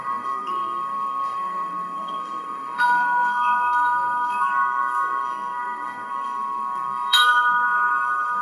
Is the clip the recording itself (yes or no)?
no